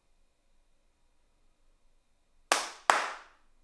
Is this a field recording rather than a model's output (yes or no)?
yes